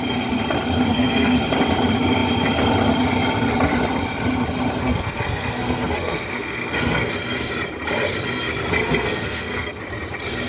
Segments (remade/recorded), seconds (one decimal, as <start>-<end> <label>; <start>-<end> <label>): 0.0-0.9 recorded; 0.9-1.4 remade; 1.4-4.8 recorded; 4.8-7.1 remade; 7.1-8.8 recorded; 8.8-9.8 remade; 9.8-10.5 recorded